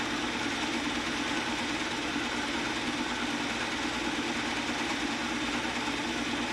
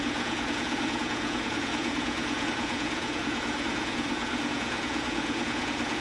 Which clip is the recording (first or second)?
first